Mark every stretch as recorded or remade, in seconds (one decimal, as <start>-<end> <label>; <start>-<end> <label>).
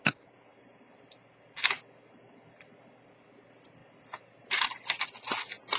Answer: 0.0-0.5 recorded; 0.5-1.6 remade; 1.6-3.8 recorded; 3.8-5.0 remade; 5.0-5.8 recorded